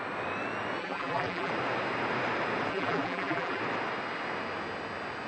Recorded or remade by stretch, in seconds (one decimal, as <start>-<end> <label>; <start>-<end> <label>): 0.0-0.8 recorded; 0.8-1.5 remade; 1.5-2.7 recorded; 2.7-3.6 remade; 3.6-5.3 recorded